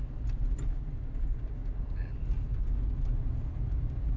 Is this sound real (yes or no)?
yes